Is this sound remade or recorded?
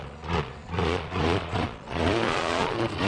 remade